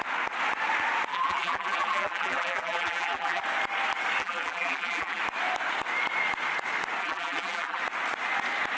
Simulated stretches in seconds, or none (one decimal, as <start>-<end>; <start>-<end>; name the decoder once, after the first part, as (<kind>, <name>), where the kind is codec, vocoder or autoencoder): 1.1-3.4 (vocoder, BigVGAN v2); 4.2-5.2; 7.0-7.8